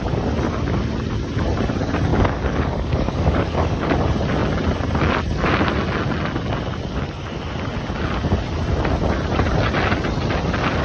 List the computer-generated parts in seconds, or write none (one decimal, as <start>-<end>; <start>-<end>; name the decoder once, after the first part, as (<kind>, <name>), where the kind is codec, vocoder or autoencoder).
2.1-3.9 (codec, DAC)